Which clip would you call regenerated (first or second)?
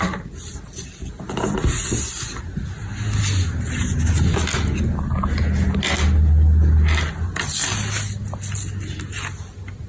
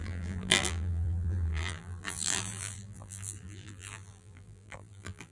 second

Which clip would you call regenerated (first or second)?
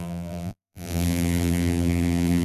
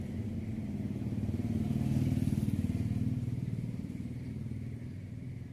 first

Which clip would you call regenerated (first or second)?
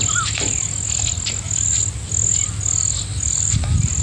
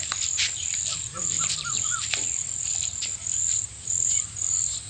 second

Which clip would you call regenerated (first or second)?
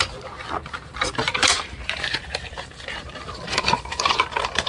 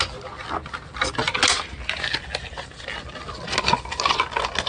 first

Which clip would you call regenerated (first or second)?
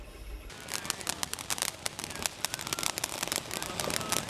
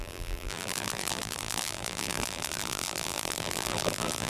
second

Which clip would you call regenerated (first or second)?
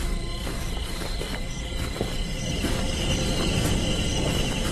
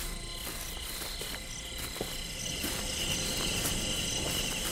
first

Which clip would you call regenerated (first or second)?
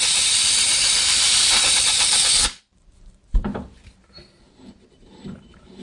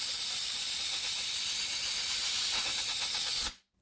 first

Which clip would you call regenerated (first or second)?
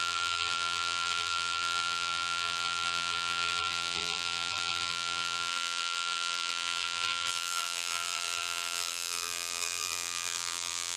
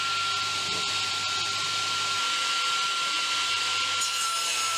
first